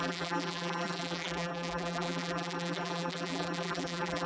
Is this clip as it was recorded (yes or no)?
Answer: no